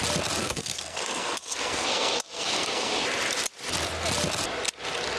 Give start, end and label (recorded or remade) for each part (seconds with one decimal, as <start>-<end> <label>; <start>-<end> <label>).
0.0-0.4 recorded; 0.4-2.9 remade; 2.9-5.2 recorded